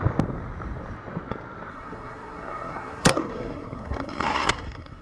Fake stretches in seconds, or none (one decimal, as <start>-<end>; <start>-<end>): 1.7-5.0